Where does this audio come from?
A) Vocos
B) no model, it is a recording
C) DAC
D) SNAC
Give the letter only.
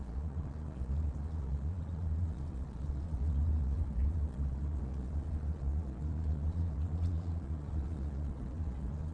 A